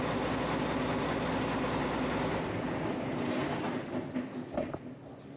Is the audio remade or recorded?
recorded